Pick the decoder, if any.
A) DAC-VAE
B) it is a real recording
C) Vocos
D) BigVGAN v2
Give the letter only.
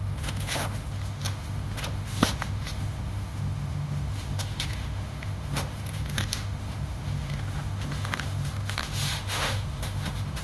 A